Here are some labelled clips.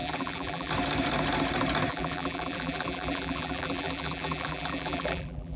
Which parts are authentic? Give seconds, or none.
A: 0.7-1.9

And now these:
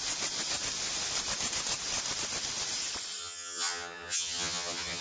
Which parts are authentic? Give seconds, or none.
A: 0.0-3.2

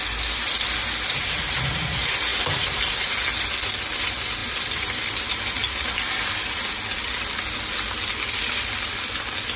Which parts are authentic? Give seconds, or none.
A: 0.0-4.4; 6.4-9.6

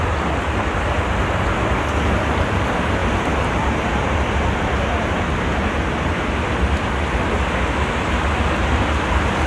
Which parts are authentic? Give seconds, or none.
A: 0.0-9.5

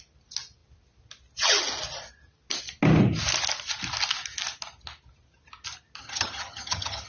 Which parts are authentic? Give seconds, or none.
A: 0.0-6.0

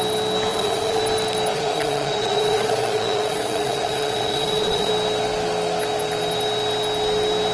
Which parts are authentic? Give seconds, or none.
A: 0.0-0.5; 1.0-1.5; 4.9-7.5

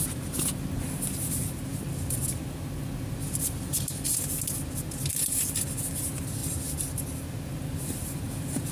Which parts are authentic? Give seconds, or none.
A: 0.0-8.7

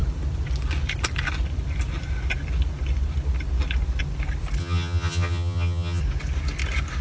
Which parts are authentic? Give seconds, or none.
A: 0.0-4.6; 6.0-7.0